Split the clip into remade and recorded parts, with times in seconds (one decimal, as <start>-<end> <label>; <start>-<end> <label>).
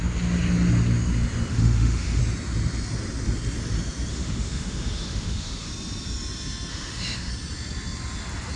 0.0-1.5 recorded; 1.5-2.2 remade; 2.2-4.1 recorded; 4.1-5.7 remade; 5.7-6.7 recorded; 6.7-7.3 remade; 7.3-8.6 recorded